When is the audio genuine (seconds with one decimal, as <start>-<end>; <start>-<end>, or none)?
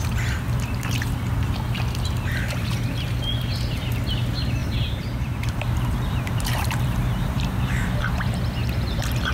0.0-4.6; 8.0-8.6